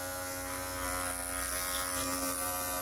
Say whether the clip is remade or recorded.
recorded